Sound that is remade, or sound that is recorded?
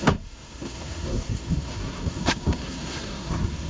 remade